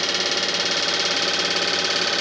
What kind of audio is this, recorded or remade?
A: recorded